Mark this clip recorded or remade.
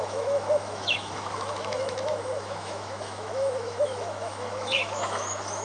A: remade